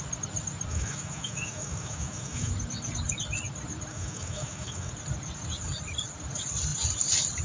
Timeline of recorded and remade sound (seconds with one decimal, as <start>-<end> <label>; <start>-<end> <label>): 0.0-0.7 recorded; 0.7-2.5 remade; 2.5-3.9 recorded; 3.9-4.9 remade; 4.9-7.4 recorded